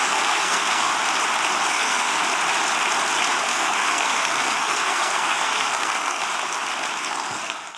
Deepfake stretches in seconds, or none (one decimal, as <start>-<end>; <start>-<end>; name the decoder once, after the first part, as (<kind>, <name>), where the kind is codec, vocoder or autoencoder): 0.0-0.9 (codec, SNAC); 1.7-2.2; 3.4-6.2; 7.0-7.8